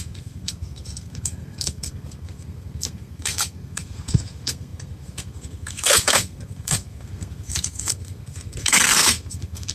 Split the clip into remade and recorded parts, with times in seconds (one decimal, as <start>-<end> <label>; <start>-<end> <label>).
0.0-9.7 remade